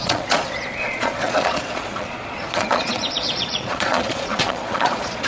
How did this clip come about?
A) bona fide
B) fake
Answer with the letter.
B